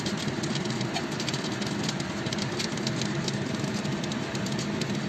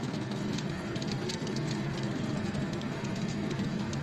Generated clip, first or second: second